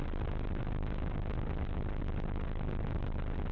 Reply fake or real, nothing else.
real